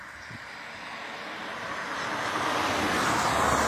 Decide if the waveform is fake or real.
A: real